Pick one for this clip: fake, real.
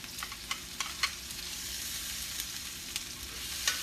real